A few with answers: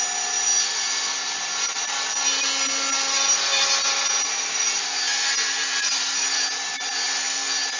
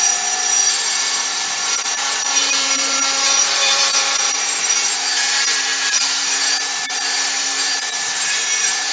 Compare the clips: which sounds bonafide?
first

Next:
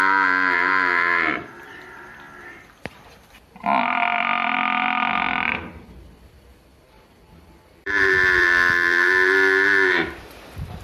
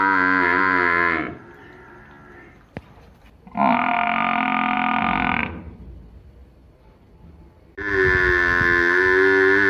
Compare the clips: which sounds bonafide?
second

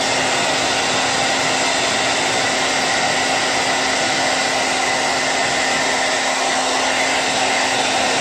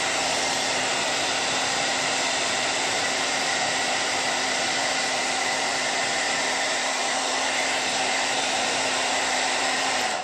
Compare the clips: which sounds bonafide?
first